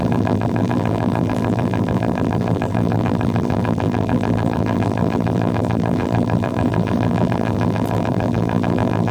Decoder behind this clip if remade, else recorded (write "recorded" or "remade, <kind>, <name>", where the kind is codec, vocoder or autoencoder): remade, vocoder, BigVGAN v2